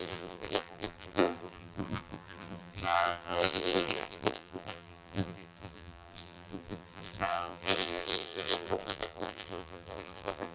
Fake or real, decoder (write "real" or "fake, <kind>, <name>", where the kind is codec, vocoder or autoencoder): fake, vocoder, BigVGAN v2